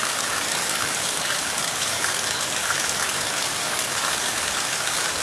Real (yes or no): no